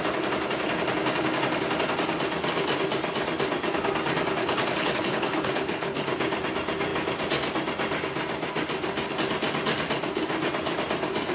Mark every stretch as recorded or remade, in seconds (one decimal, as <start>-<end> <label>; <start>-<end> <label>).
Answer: 0.0-4.4 recorded; 4.4-6.0 remade; 6.0-11.3 recorded